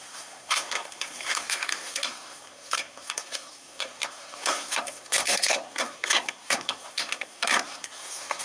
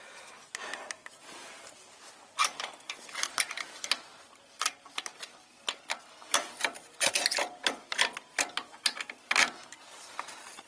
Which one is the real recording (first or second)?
second